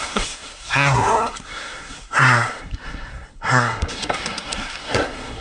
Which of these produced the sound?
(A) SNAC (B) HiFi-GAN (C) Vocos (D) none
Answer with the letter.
A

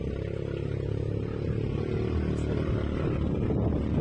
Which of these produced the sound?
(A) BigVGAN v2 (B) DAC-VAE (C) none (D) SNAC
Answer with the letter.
C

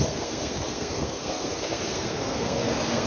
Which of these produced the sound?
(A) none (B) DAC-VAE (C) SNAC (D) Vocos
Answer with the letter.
C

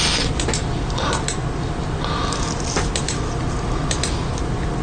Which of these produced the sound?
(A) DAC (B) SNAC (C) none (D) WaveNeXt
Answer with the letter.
C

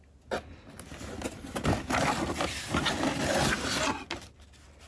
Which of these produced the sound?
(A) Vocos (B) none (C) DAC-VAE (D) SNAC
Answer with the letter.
B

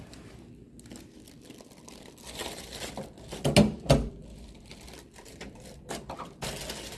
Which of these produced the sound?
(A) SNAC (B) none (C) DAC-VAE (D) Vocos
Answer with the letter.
B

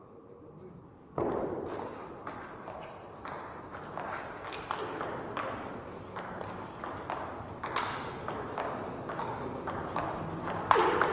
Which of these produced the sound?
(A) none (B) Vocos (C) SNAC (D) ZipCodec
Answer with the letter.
A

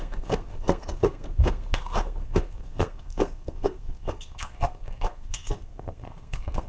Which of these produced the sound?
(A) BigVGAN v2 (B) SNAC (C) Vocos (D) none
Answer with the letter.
B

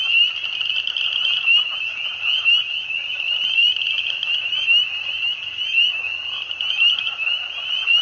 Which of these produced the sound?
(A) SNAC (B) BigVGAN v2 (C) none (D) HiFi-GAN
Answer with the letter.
C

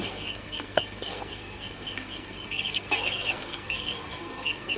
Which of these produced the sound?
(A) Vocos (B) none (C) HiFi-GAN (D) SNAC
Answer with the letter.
D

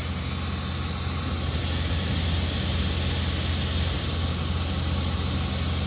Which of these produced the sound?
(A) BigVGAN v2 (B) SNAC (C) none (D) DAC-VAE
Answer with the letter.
C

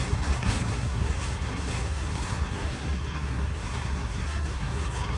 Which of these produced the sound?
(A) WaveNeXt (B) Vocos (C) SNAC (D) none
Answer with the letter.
C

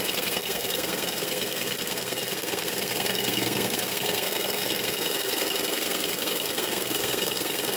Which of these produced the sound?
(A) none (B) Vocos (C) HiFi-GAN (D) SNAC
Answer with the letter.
D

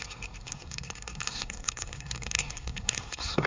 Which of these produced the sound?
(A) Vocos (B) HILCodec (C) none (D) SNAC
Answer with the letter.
D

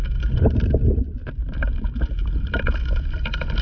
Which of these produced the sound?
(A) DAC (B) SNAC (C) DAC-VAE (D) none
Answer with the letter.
D